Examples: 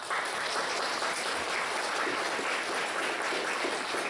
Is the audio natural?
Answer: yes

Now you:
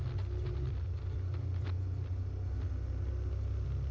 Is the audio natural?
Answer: yes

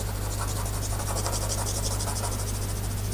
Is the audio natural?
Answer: yes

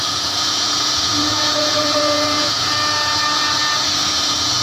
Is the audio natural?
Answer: no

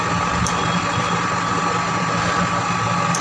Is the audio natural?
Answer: no